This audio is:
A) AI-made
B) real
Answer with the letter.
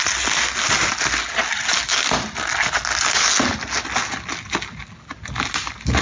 B